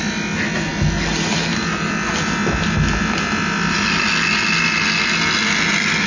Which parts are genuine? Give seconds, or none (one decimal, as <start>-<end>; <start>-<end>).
0.0-6.1